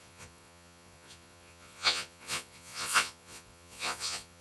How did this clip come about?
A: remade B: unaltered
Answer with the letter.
A